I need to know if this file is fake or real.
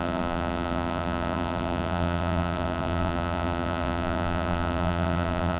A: fake